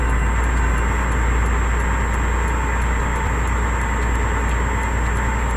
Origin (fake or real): real